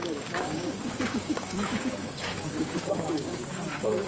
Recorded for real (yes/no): no